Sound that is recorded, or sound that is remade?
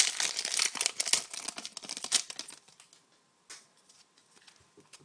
recorded